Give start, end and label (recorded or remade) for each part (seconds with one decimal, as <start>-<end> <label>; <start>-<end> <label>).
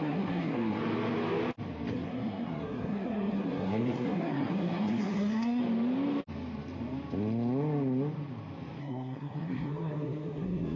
0.0-0.8 remade; 0.8-1.9 recorded; 1.9-5.6 remade; 5.6-8.8 recorded; 8.8-10.8 remade